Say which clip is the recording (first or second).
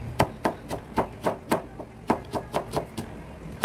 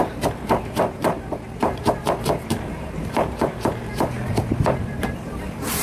first